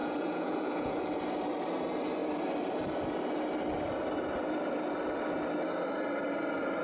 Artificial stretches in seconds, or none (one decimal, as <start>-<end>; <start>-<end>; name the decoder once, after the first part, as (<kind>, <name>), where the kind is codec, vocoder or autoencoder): 0.0-1.0 (vocoder, Vocos)